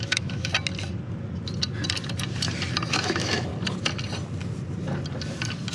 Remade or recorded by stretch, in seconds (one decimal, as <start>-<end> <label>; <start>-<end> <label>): 0.0-0.5 remade; 0.5-2.9 recorded; 2.9-3.5 remade; 3.5-5.7 recorded